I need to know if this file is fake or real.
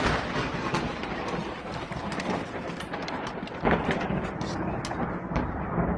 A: real